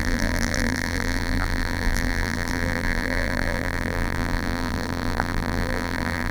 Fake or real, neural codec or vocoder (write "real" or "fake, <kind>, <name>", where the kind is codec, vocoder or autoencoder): fake, vocoder, BigVGAN v2